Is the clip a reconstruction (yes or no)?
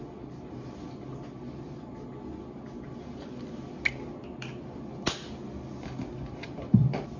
no